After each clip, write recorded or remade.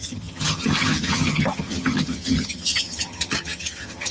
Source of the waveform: remade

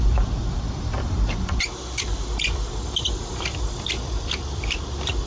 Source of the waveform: recorded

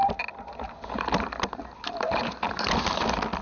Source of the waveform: recorded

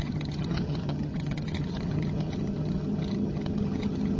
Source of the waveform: remade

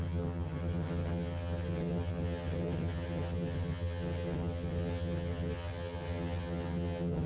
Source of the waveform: remade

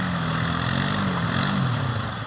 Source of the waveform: recorded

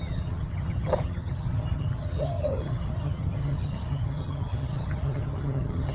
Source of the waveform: remade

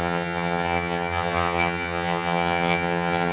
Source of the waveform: remade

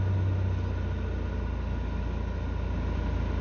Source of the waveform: recorded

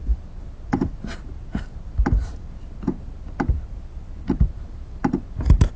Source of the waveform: recorded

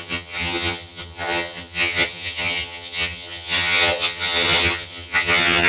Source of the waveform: remade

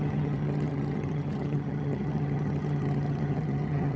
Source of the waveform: remade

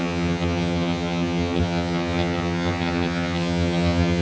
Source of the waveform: remade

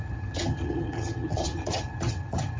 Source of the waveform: remade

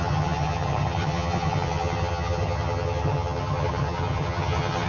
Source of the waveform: remade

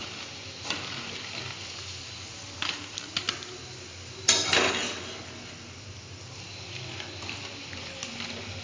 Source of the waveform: recorded